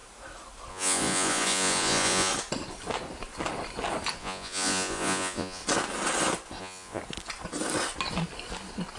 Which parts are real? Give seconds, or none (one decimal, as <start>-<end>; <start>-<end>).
0.0-0.7; 2.3-4.2; 5.6-6.6; 7.0-9.0

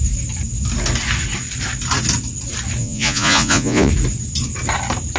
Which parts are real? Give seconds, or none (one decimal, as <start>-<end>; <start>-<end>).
0.0-2.8; 3.9-5.2